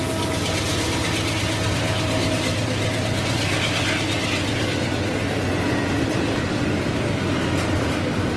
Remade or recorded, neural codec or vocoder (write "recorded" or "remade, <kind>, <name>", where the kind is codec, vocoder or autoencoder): recorded